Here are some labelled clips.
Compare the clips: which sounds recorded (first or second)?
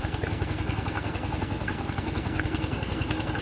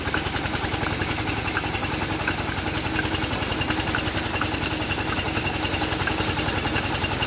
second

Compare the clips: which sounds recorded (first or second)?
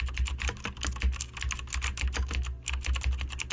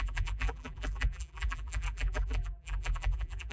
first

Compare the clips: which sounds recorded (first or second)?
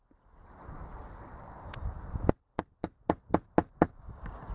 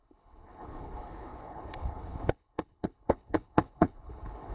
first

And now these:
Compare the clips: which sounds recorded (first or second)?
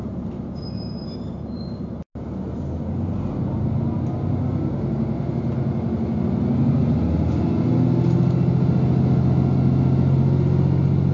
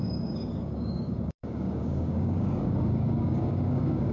first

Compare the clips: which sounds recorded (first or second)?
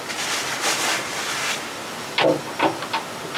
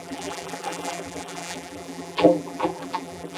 first